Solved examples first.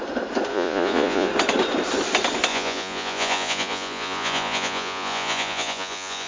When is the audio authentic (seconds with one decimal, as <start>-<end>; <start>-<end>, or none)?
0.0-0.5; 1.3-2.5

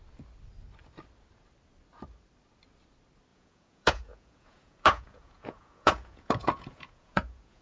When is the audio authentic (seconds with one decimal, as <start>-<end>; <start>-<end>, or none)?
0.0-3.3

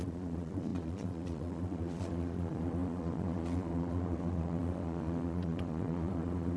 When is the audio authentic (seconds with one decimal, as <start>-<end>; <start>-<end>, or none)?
none